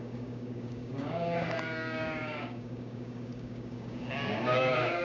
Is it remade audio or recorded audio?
remade